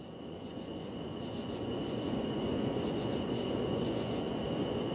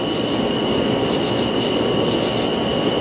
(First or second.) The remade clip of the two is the first